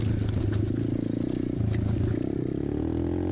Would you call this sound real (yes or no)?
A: yes